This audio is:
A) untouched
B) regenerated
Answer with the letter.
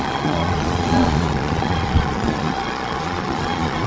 B